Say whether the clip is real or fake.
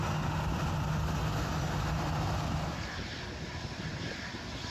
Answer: real